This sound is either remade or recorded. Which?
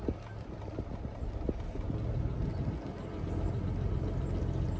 recorded